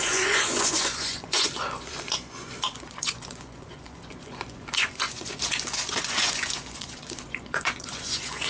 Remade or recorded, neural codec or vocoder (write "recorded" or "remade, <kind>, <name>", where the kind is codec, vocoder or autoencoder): remade, vocoder, Vocos